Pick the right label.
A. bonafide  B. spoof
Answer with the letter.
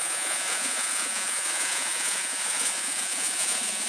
B